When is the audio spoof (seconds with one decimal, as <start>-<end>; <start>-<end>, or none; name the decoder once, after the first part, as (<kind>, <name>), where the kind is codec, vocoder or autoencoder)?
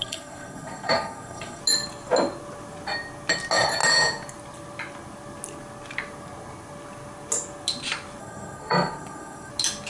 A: 0.0-1.6 (codec, SNAC); 8.2-9.5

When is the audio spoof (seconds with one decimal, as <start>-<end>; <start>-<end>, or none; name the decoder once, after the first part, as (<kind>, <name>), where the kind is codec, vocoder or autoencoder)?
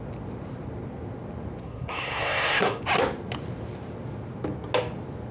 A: 1.6-2.8 (codec, SNAC)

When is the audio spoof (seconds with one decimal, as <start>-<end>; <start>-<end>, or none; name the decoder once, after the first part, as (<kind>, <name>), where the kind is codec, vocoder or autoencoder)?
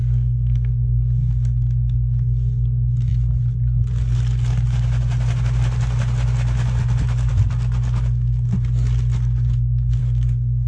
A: 0.0-0.7 (codec, SNAC); 10.0-10.7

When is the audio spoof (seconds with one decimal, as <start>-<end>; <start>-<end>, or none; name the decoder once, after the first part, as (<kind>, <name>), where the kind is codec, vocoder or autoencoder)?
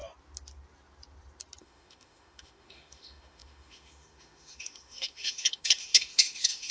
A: 1.6-6.7 (autoencoder, DAC-VAE)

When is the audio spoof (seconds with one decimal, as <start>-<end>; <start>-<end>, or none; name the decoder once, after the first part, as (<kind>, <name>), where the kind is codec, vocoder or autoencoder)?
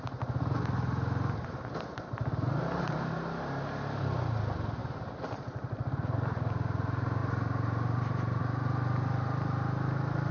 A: 2.6-3.1 (vocoder, BigVGAN v2); 4.8-5.3; 7.2-8.4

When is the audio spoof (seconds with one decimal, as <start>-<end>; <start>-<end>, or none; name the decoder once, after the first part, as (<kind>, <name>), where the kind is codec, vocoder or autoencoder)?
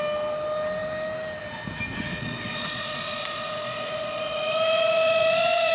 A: 2.1-5.7 (vocoder, Vocos)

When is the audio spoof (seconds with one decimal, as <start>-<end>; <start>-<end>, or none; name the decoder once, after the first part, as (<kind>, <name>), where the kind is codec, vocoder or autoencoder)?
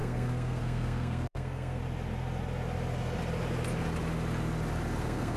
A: 0.0-1.8 (codec, SNAC); 5.0-5.4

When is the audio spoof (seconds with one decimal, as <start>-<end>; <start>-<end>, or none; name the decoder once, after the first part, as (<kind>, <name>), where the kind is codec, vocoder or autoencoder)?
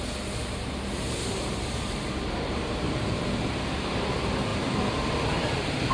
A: 0.4-3.9 (vocoder, BigVGAN v2)